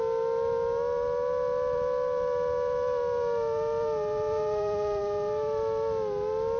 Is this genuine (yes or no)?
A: yes